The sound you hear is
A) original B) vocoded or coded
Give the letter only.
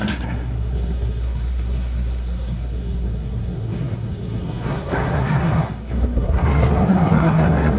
B